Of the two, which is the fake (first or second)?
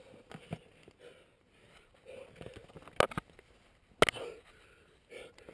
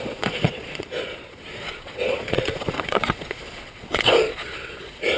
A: second